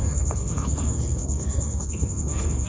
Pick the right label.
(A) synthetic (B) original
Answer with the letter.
A